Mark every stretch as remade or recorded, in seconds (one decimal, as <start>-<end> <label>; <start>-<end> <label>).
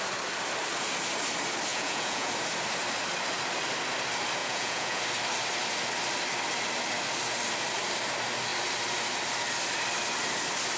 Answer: 0.0-1.7 recorded; 1.7-2.3 remade; 2.3-4.4 recorded; 4.4-5.0 remade; 5.0-10.8 recorded